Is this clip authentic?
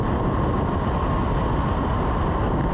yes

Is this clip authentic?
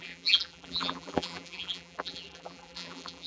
no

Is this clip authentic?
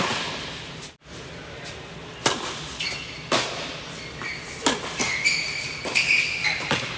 yes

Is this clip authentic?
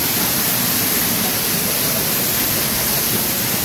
no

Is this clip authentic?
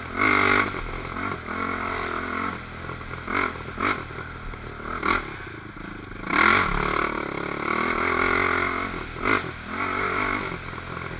yes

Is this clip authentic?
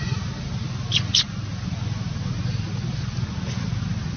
yes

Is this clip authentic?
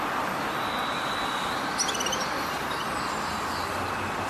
yes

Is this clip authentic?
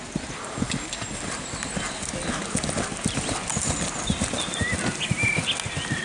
yes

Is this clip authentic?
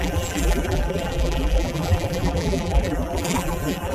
no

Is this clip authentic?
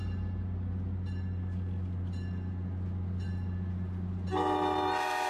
yes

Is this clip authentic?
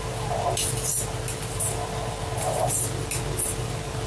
yes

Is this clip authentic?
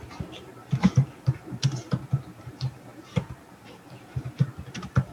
no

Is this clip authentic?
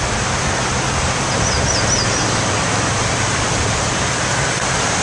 no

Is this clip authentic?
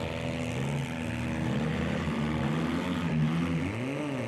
yes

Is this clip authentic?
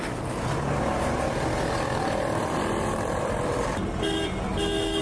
yes